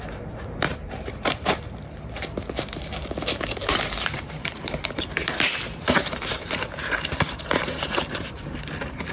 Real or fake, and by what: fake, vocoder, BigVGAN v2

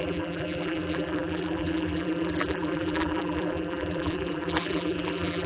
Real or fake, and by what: fake, vocoder, BigVGAN v2